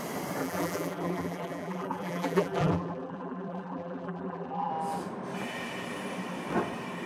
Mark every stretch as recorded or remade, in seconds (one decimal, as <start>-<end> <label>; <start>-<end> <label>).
0.0-0.4 recorded; 0.4-4.7 remade; 4.7-7.1 recorded